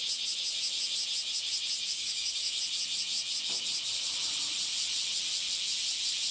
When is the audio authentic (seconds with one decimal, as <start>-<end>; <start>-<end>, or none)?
0.0-1.9; 2.6-6.3